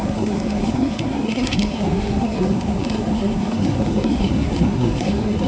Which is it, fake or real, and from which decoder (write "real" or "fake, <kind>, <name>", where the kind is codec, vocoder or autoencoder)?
fake, codec, SNAC